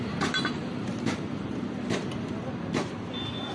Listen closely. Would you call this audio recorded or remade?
recorded